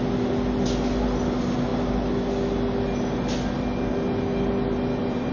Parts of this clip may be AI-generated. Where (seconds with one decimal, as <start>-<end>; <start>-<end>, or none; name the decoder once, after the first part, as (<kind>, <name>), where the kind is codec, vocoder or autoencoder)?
1.7-5.3 (vocoder, BigVGAN v2)